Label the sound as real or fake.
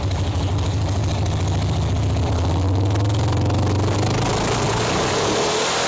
real